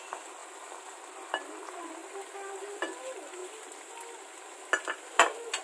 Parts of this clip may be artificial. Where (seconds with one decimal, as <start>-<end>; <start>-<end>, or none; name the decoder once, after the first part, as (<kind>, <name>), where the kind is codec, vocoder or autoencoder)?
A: none